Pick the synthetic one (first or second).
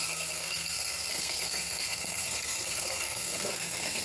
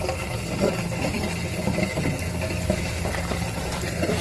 first